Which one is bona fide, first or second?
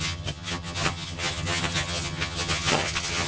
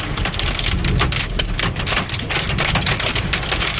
second